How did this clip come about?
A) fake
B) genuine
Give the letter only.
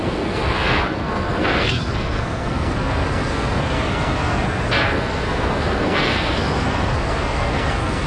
A